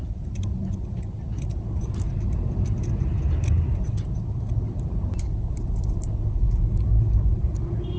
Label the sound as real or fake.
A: real